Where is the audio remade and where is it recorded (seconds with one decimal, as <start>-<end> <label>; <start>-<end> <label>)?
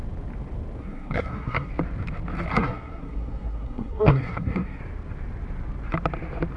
0.0-0.8 recorded; 0.8-1.7 remade; 1.7-2.5 recorded; 2.5-4.8 remade; 4.8-6.6 recorded